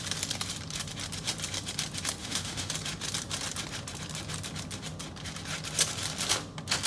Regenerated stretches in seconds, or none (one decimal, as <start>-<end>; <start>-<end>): 2.2-2.7